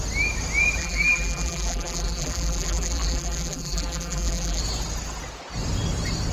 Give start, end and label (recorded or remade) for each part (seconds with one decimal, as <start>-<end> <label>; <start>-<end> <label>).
0.0-0.8 recorded; 0.8-4.6 remade; 4.6-6.3 recorded